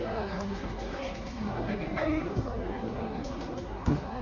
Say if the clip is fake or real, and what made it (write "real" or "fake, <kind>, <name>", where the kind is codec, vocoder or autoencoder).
fake, codec, SNAC